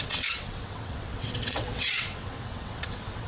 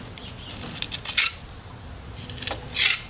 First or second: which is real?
second